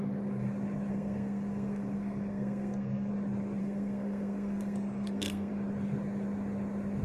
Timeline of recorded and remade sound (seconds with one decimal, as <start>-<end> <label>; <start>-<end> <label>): 0.0-0.9 recorded; 0.9-3.1 remade; 3.1-3.6 recorded; 3.6-5.5 remade; 5.5-7.0 recorded